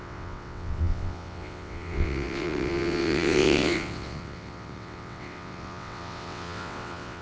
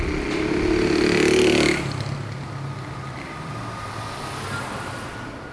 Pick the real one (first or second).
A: second